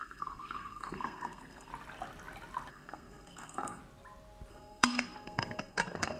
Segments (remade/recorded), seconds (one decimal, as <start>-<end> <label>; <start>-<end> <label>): 0.0-1.7 remade; 1.7-2.7 recorded; 2.7-3.8 remade; 3.8-4.5 recorded; 4.5-6.2 remade